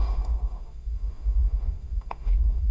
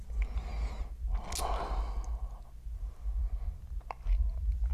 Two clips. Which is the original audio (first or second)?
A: second